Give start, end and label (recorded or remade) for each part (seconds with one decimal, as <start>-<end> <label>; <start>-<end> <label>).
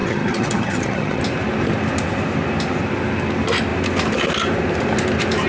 0.0-1.2 remade; 1.2-5.5 recorded